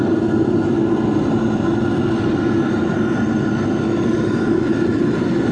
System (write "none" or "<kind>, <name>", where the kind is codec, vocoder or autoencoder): none